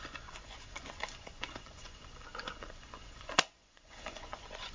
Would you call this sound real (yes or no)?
no